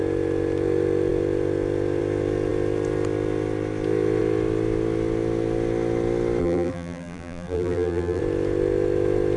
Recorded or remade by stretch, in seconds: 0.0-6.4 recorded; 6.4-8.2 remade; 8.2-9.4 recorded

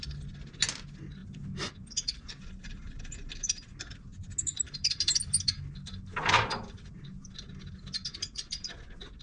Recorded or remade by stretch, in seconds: 0.0-9.2 recorded

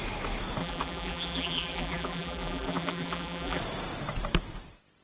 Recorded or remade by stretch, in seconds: 0.0-0.6 recorded; 0.6-3.6 remade; 3.6-5.0 recorded

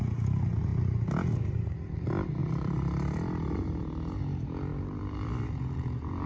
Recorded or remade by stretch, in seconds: 0.0-2.4 recorded; 2.4-3.8 remade; 3.8-4.7 recorded; 4.7-5.6 remade; 5.6-6.3 recorded

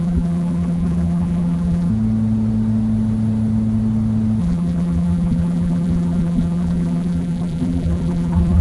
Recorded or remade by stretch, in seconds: 0.0-1.9 remade; 1.9-4.4 recorded; 4.4-8.6 remade

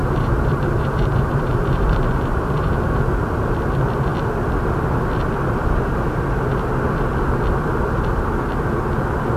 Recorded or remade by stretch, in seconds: 0.0-2.9 remade; 2.9-9.4 recorded